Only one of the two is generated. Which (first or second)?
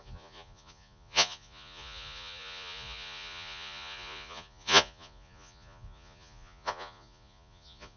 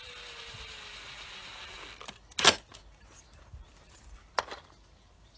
first